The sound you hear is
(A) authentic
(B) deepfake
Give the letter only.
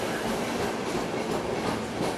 A